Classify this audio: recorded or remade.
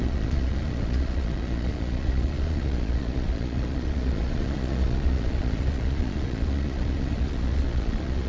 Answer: remade